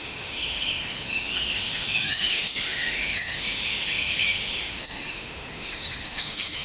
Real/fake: fake